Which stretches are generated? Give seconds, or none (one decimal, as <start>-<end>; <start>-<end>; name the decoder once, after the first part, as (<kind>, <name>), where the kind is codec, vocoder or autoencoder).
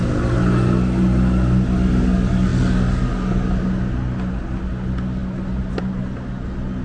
none